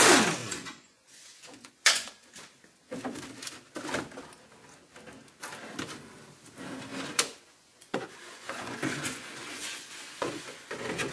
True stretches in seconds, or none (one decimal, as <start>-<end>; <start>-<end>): 0.0-0.4; 2.3-6.9